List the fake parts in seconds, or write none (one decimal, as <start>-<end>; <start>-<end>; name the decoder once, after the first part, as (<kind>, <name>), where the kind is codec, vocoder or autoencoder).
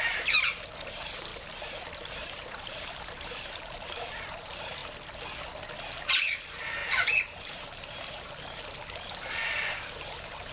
0.0-4.8 (vocoder, BigVGAN v2); 5.9-10.5